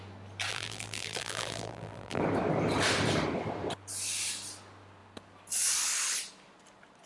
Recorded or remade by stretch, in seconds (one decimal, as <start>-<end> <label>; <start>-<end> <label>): 0.0-0.5 recorded; 0.5-2.2 remade; 2.2-7.1 recorded